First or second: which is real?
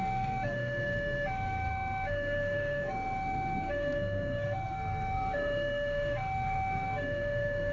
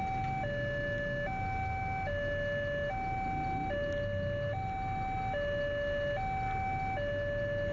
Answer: second